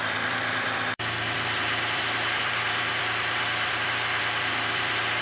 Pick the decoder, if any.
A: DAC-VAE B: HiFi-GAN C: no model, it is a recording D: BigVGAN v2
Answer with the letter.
D